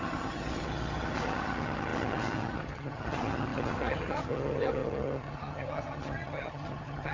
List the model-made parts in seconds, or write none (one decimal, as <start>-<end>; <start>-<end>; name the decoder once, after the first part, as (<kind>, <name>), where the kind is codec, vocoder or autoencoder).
0.0-7.1 (vocoder, HiFi-GAN)